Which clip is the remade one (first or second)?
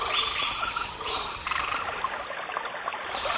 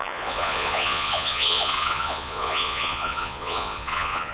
second